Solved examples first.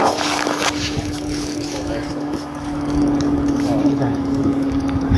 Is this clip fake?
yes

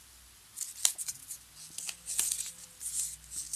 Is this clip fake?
no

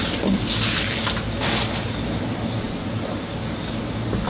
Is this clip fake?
no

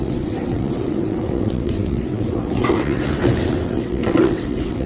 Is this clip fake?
yes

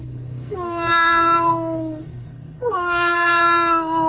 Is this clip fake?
yes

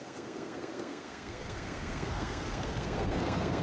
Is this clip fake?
yes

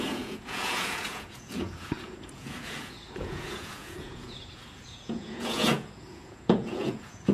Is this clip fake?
yes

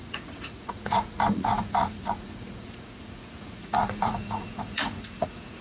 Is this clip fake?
yes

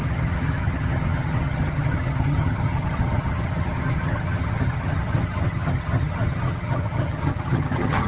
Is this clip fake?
yes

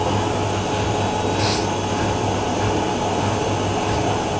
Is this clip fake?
no